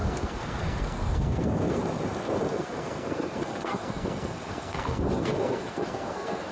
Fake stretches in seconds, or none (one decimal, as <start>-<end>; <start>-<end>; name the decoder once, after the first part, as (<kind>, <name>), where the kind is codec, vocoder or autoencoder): 0.0-1.8 (codec, SNAC); 2.5-6.5